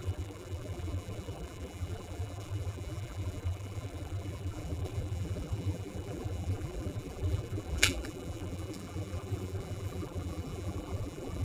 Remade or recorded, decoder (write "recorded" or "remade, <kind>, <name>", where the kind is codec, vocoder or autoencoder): remade, vocoder, BigVGAN v2